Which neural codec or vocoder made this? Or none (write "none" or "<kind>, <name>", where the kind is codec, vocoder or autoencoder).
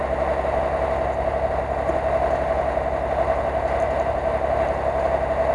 none